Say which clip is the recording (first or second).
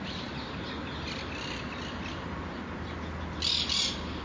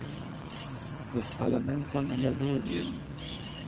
first